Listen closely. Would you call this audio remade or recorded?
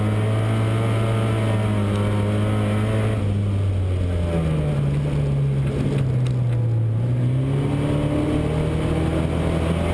recorded